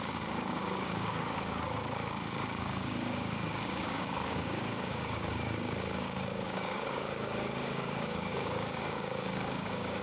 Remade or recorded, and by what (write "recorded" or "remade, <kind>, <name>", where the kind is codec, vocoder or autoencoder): remade, codec, DAC